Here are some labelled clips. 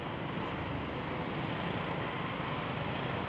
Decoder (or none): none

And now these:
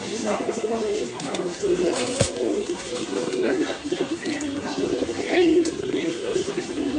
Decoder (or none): codec, SNAC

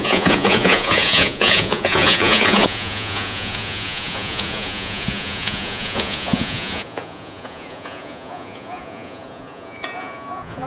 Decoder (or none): vocoder, Vocos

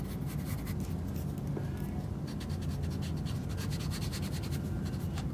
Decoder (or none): none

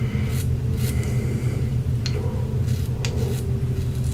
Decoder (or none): none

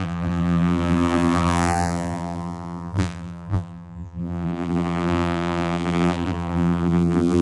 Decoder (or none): vocoder, BigVGAN v2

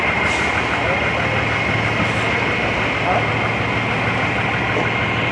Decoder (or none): none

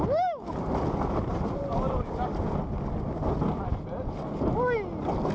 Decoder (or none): none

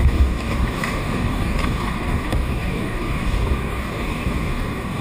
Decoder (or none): codec, DAC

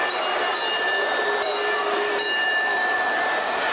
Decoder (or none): vocoder, BigVGAN v2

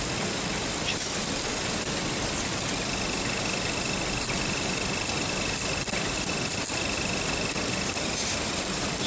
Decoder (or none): vocoder, BigVGAN v2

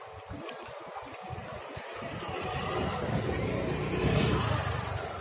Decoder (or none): none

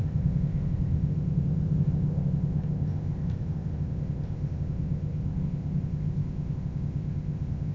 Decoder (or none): codec, ZipCodec